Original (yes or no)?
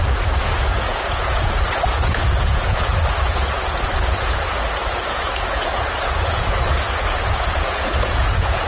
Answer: no